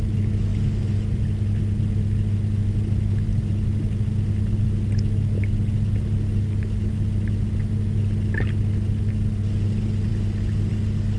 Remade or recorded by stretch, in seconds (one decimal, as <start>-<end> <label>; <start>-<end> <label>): 0.0-11.2 recorded